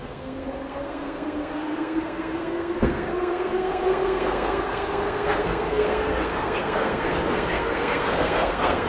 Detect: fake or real fake